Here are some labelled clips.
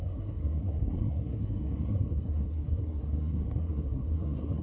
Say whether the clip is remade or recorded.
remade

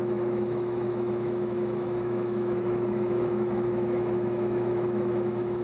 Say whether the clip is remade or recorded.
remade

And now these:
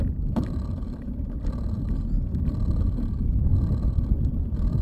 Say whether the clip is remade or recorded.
remade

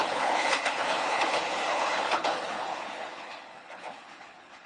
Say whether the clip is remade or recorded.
remade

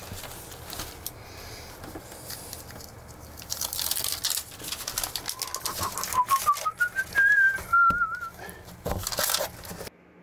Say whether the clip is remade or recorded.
recorded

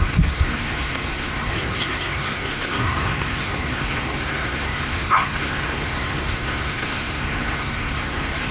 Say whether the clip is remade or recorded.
remade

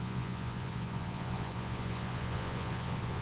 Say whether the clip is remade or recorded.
remade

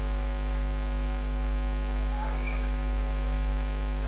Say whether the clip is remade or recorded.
remade